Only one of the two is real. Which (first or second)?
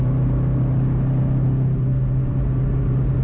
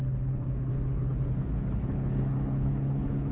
first